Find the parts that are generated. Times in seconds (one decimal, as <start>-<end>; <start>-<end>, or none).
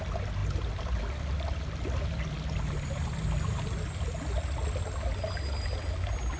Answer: none